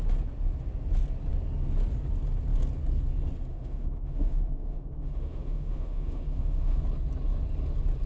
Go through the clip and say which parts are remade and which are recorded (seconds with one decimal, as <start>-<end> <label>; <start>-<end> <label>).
0.0-3.5 recorded; 3.5-6.8 remade; 6.8-8.1 recorded